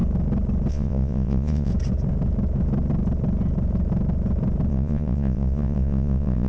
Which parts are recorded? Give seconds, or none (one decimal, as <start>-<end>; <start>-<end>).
0.0-0.7; 1.7-4.7